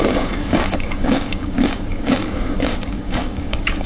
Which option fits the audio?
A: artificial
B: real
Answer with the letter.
A